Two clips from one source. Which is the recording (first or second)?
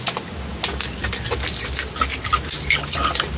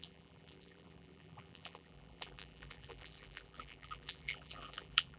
first